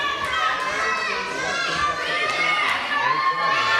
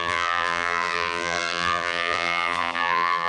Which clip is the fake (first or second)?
second